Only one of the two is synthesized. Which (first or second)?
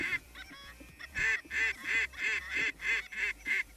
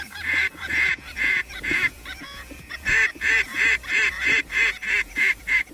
second